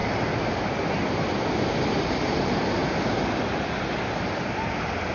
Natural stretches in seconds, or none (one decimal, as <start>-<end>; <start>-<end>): 0.9-5.1